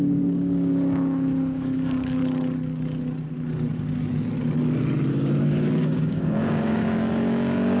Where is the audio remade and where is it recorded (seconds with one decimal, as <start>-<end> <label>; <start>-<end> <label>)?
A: 0.0-2.2 remade; 2.2-5.1 recorded; 5.1-7.8 remade